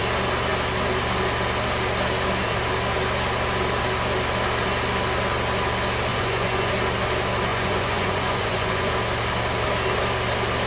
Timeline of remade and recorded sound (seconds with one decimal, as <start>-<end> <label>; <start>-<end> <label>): 0.0-6.1 recorded; 6.1-6.7 remade; 6.7-7.5 recorded; 7.5-8.9 remade; 8.9-10.7 recorded